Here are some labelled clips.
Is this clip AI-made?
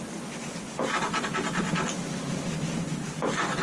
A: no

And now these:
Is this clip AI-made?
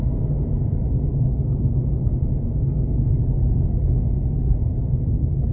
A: no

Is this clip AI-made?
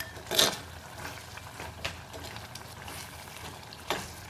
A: no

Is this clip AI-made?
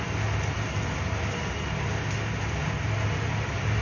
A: no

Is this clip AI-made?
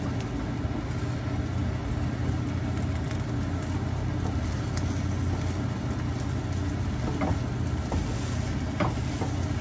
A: no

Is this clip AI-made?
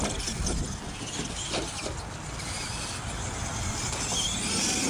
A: no